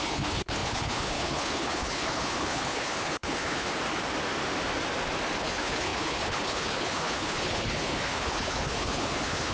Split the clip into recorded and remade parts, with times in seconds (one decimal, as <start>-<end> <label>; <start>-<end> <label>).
0.0-3.7 remade; 3.7-5.4 recorded; 5.4-9.5 remade